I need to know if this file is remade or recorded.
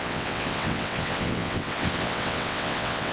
remade